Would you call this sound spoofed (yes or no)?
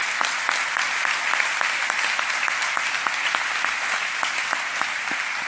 no